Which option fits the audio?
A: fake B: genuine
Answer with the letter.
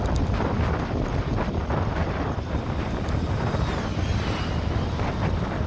B